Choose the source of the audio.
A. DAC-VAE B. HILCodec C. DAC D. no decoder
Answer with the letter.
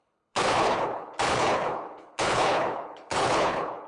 B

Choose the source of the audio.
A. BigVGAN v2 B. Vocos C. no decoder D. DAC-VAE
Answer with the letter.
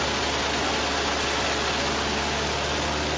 C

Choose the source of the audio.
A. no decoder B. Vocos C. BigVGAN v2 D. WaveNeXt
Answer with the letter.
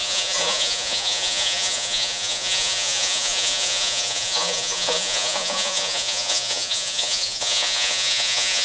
B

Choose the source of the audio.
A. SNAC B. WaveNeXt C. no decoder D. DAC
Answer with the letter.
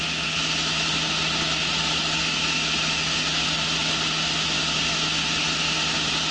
C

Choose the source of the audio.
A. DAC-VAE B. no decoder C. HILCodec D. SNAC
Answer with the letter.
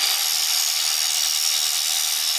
B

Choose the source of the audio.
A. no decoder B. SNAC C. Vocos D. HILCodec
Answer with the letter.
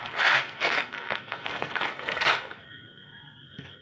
B